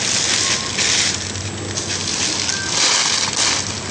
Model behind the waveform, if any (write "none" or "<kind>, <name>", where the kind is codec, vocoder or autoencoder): none